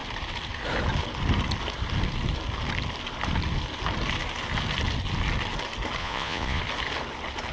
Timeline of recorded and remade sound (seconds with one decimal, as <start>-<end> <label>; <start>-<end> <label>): 0.0-6.0 recorded; 6.0-6.6 remade; 6.6-7.5 recorded